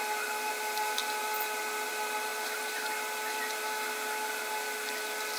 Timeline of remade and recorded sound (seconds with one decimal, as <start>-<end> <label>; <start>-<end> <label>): 0.0-5.4 recorded